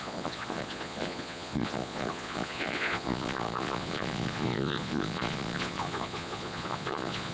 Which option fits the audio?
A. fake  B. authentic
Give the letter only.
A